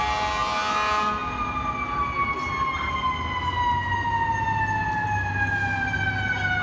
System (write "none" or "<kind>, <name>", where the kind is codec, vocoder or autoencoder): none